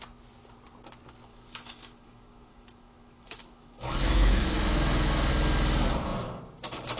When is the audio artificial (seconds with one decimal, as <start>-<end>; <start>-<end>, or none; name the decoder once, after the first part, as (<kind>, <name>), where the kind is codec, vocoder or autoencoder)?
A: 1.3-5.3 (autoencoder, DAC-VAE)